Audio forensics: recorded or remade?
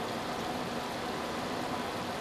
recorded